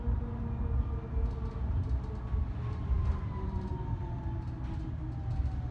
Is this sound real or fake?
real